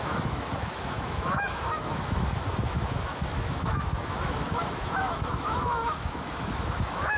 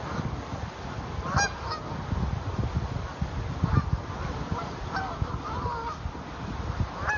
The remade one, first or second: first